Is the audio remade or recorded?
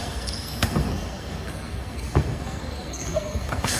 remade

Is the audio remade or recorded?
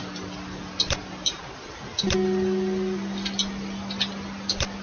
recorded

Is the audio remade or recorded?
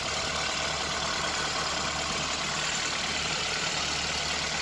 recorded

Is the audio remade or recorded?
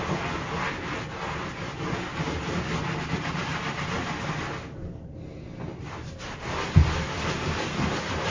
recorded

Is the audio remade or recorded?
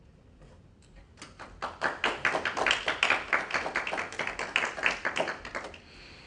recorded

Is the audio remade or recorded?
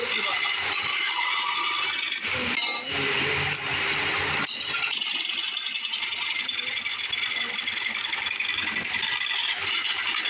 recorded